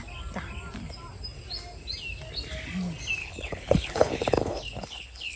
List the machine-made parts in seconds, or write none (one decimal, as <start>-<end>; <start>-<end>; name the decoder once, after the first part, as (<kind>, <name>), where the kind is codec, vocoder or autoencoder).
3.2-5.4 (codec, HILCodec)